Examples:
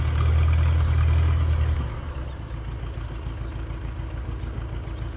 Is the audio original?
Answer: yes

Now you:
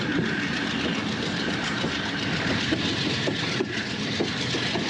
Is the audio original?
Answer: no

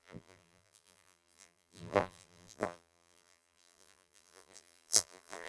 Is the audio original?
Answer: no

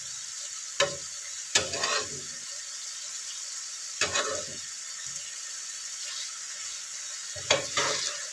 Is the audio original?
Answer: yes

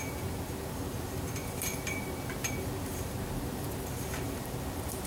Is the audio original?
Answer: no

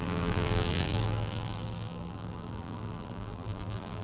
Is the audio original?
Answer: no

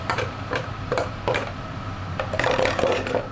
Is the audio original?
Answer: no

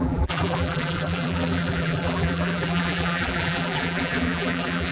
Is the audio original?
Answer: no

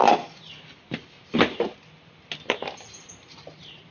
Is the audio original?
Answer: yes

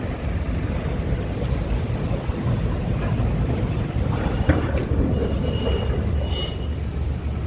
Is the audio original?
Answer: no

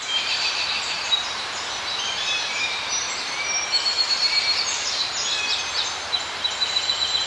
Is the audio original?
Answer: no